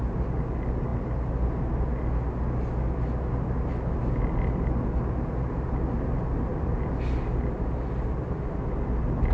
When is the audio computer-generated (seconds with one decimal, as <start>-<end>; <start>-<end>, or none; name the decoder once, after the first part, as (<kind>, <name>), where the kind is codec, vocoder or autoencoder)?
none